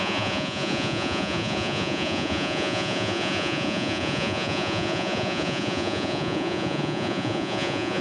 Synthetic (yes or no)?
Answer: yes